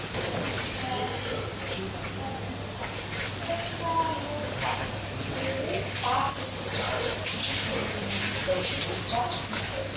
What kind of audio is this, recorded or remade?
recorded